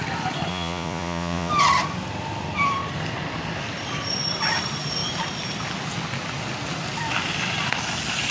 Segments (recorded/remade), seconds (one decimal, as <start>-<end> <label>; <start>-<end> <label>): 0.0-0.5 recorded; 0.5-1.5 remade; 1.5-8.3 recorded